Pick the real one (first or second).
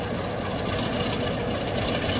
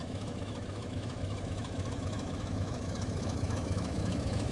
first